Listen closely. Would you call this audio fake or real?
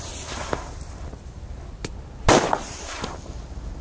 real